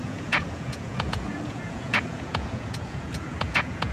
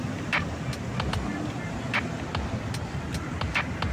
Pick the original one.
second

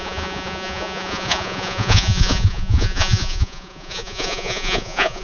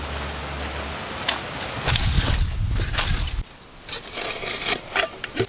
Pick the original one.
second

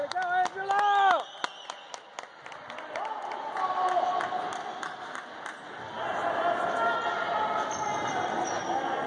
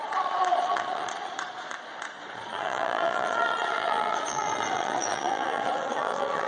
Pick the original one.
first